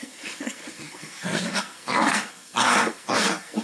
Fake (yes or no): yes